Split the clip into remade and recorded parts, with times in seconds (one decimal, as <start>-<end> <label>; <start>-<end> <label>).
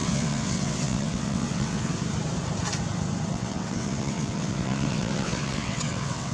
0.0-1.9 remade; 1.9-3.3 recorded; 3.3-6.3 remade